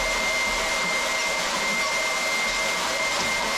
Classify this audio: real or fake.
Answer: real